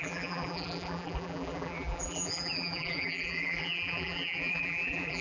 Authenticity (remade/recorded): remade